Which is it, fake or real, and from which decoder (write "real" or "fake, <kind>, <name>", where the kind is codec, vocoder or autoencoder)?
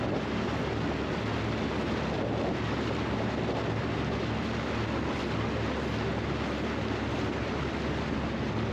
real